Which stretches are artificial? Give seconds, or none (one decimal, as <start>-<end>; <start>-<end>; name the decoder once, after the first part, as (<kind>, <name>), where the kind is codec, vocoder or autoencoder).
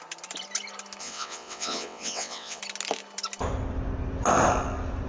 1.0-2.6 (vocoder, WaveNeXt)